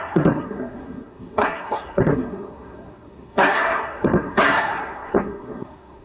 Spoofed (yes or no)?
yes